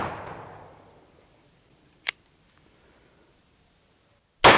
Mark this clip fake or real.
real